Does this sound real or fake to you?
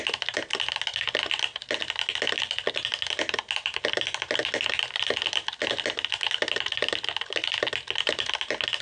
real